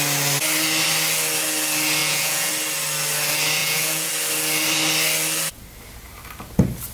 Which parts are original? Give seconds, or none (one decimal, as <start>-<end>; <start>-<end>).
0.0-2.0; 2.5-3.6; 4.1-6.9